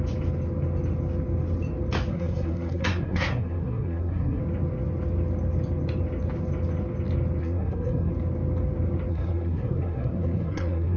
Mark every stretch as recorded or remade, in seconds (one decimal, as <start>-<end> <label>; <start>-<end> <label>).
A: 0.0-2.1 recorded; 2.1-4.4 remade; 4.4-7.4 recorded; 7.4-8.1 remade; 8.1-9.1 recorded; 9.1-11.0 remade

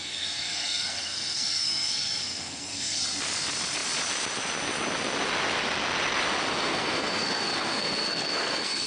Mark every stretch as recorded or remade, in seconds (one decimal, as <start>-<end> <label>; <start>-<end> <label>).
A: 0.0-3.0 remade; 3.0-6.7 recorded; 6.7-8.9 remade

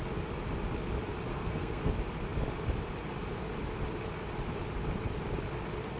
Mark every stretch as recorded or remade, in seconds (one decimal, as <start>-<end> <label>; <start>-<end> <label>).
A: 0.0-1.3 recorded; 1.3-1.9 remade; 1.9-6.0 recorded

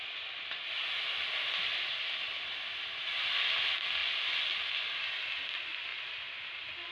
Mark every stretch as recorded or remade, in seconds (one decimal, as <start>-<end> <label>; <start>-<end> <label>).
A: 0.0-6.9 recorded

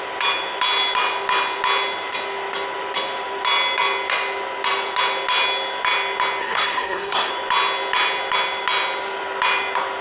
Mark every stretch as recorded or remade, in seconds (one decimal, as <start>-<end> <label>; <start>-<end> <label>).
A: 0.0-6.4 recorded; 6.4-7.3 remade; 7.3-10.0 recorded

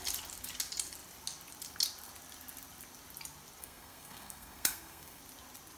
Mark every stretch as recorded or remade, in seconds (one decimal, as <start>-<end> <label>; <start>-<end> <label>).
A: 0.0-3.6 recorded; 3.6-5.2 remade; 5.2-5.8 recorded